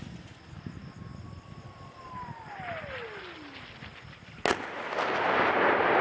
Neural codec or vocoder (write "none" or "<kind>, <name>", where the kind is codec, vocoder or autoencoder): none